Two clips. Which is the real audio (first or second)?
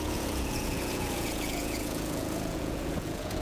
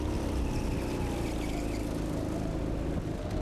second